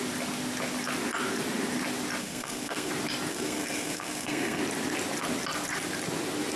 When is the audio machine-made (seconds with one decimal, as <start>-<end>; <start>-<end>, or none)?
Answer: 2.2-2.9; 3.3-4.6